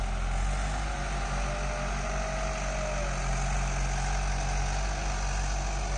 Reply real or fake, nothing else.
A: real